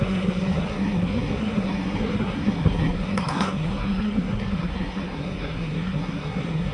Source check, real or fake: fake